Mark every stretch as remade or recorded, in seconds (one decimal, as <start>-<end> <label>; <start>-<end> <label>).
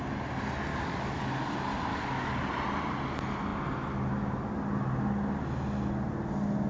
0.0-0.7 recorded; 0.7-1.2 remade; 1.2-1.9 recorded; 1.9-2.5 remade; 2.5-6.7 recorded